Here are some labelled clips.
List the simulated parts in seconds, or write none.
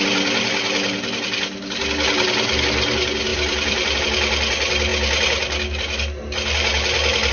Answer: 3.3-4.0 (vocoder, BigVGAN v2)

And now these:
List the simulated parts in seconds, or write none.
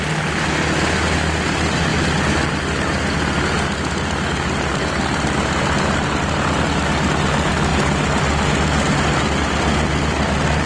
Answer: none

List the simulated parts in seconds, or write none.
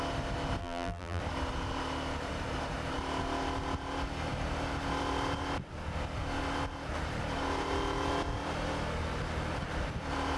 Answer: 0.6-1.2 (vocoder, BigVGAN v2)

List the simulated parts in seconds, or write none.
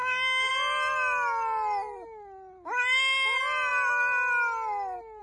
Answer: 0.0-0.5 (vocoder, BigVGAN v2)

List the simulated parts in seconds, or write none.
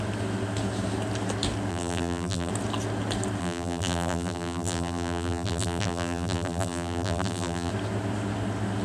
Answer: 1.7-2.5 (vocoder, BigVGAN v2); 3.4-7.7